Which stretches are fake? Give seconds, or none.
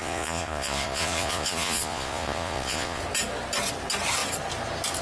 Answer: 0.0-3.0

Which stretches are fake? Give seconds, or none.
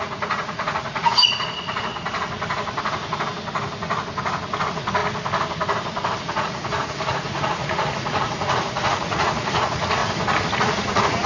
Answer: 0.0-1.9; 4.6-5.0; 6.2-10.0; 10.5-11.3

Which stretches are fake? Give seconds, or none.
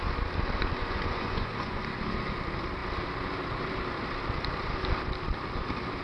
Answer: 0.8-1.8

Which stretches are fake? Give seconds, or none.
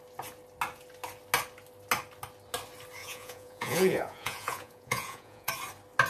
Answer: 3.0-5.5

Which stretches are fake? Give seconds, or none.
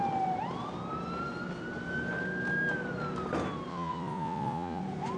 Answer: 3.7-4.8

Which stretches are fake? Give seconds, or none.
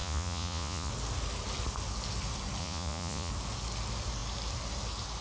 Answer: 0.0-0.9; 2.6-3.3